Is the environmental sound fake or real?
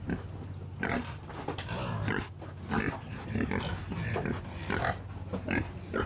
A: real